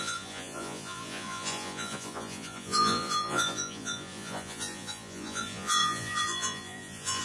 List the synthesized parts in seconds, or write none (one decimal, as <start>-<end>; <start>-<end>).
0.0-7.2

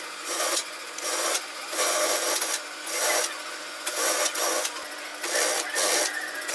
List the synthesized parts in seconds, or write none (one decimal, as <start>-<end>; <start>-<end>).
0.0-5.1; 6.1-6.5

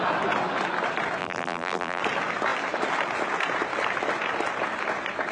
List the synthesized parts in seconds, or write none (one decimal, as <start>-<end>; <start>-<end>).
1.2-2.0

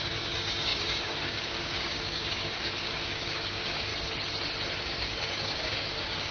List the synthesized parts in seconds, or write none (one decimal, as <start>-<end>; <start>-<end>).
0.0-3.9; 4.8-6.3